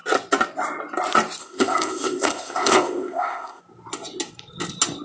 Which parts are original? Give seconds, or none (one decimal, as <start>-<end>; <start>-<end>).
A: 0.0-1.4; 3.6-5.0